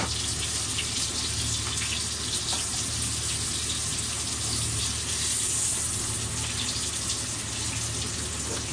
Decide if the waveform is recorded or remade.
recorded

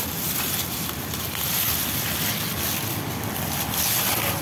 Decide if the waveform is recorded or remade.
recorded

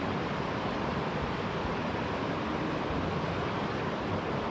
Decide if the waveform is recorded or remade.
recorded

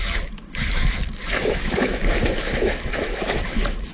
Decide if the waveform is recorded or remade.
remade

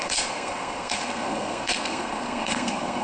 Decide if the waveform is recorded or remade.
remade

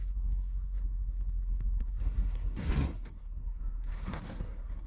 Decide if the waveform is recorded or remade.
remade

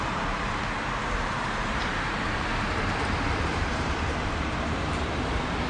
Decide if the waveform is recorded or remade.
remade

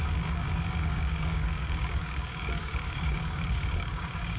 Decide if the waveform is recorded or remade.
remade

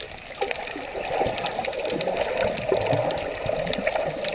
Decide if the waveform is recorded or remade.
recorded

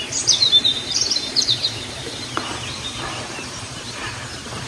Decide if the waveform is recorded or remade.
remade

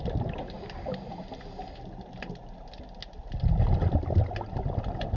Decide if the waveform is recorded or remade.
recorded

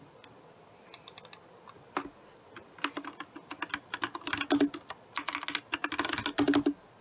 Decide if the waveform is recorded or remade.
recorded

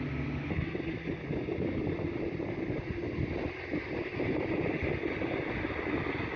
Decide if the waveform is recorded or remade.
recorded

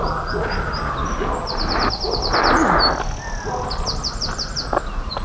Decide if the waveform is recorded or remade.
recorded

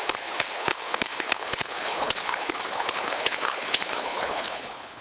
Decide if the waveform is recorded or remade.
remade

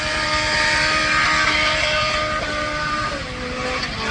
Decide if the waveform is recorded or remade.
remade